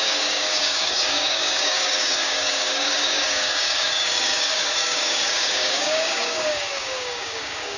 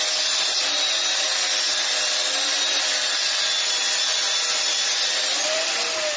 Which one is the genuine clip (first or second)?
second